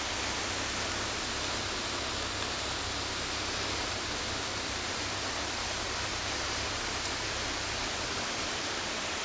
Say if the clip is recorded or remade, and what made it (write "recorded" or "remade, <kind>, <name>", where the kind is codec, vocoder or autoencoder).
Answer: recorded